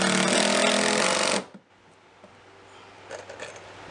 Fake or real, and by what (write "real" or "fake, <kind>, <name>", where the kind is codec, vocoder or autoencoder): real